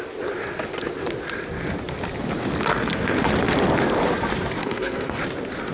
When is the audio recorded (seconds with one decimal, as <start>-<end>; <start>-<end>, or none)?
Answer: 0.0-2.7; 3.3-4.6; 5.2-5.7